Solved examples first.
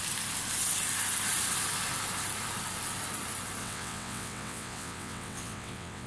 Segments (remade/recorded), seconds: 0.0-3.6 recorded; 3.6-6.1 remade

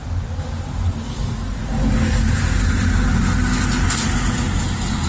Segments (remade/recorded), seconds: 0.0-5.1 recorded

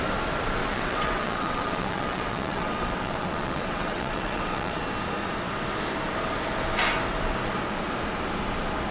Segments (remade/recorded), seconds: 0.0-0.6 recorded; 0.6-4.8 remade; 4.8-8.9 recorded